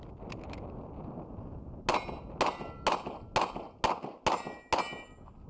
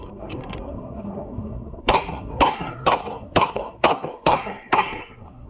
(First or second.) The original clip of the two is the first